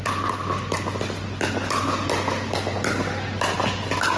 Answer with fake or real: real